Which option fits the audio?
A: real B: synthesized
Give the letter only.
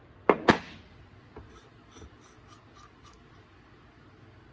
A